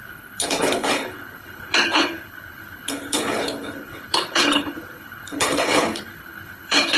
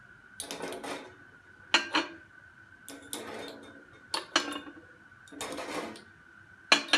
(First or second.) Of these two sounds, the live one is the second